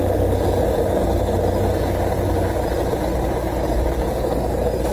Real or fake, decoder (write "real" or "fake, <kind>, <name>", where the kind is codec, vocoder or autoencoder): real